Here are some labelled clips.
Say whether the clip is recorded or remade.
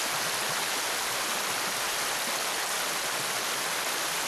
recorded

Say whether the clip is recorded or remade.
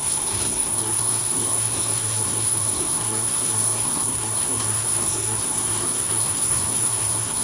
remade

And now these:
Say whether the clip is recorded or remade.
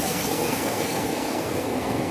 remade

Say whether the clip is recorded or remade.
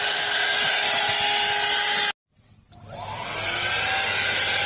recorded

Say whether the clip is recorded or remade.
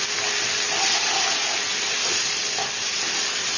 recorded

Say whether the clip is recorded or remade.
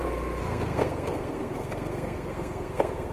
remade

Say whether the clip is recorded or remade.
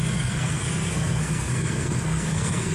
remade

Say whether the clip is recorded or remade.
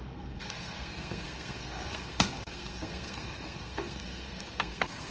remade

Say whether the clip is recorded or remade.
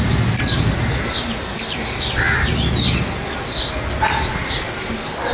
recorded